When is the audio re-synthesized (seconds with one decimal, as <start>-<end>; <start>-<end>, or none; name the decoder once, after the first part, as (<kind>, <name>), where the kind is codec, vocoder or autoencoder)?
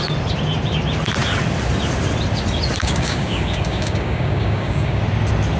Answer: 2.8-5.0 (codec, DAC)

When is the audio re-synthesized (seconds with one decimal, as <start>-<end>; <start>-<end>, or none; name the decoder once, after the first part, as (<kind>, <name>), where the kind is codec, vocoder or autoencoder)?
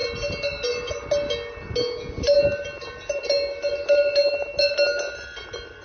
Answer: none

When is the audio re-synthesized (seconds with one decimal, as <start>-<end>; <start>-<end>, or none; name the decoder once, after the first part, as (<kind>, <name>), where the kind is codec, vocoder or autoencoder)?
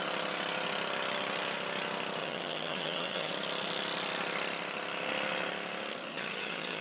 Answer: 2.2-3.3 (vocoder, HiFi-GAN); 6.1-6.8